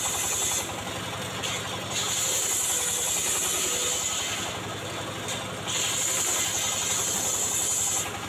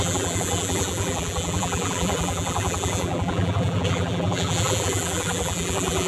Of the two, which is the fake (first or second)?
second